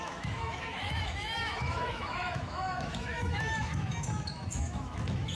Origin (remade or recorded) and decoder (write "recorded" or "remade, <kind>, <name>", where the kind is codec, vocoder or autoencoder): remade, autoencoder, DAC-VAE